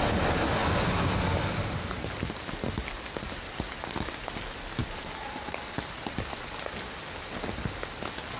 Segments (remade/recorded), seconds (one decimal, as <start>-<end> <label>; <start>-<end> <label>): 0.0-4.8 recorded; 4.8-5.6 remade; 5.6-8.4 recorded